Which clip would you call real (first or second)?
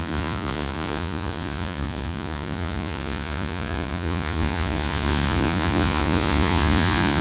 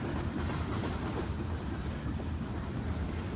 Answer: second